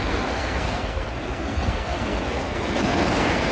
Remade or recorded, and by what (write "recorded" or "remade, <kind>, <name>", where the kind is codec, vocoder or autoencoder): remade, codec, SNAC